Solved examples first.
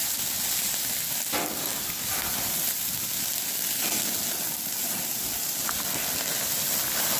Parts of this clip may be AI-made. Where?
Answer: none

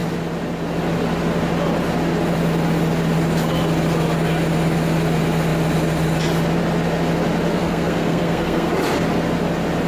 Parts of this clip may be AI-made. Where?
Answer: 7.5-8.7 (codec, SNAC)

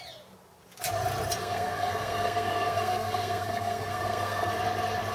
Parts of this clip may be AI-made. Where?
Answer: 1.4-4.5 (codec, SNAC)